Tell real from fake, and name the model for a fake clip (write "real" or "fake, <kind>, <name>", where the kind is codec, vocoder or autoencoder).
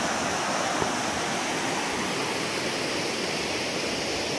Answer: real